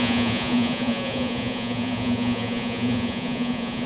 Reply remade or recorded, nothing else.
remade